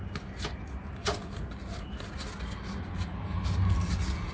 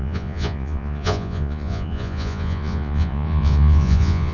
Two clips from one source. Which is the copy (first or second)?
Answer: second